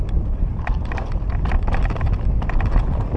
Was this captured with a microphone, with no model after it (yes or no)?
yes